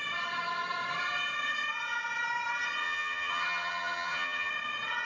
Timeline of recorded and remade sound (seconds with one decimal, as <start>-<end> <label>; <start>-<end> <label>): 0.0-2.8 recorded; 2.8-4.5 remade; 4.5-5.1 recorded